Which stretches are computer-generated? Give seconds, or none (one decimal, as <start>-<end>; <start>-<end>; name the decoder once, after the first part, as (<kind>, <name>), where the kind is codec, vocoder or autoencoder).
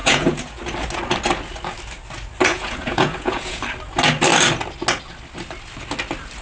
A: 0.0-0.6 (vocoder, Vocos); 2.5-3.6